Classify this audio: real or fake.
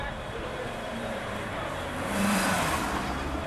fake